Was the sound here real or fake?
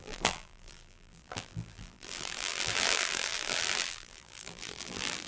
fake